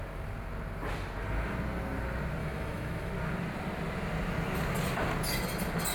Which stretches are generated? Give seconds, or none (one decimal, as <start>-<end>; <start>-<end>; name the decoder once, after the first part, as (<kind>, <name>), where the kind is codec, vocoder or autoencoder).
2.4-3.1 (autoencoder, DAC-VAE)